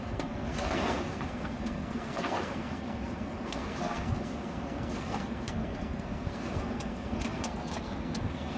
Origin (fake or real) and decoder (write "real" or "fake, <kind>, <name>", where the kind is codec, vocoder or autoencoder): fake, codec, SNAC